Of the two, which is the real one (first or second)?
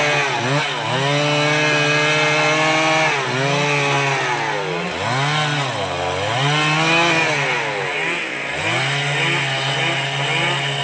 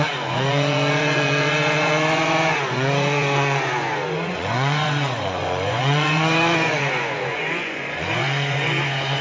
first